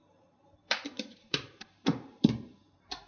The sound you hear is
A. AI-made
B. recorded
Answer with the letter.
A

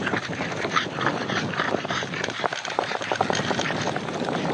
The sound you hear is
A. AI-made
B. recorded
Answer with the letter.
A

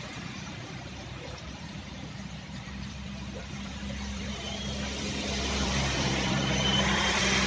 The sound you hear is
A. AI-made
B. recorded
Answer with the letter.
A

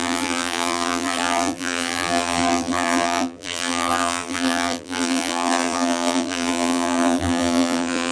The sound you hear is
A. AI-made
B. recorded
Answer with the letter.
A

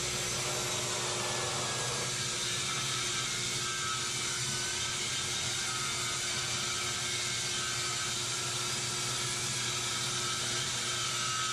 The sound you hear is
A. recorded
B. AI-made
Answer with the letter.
A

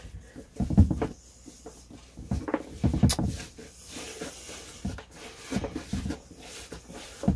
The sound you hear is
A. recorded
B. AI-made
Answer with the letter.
A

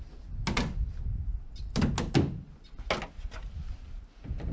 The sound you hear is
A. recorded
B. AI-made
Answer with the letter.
A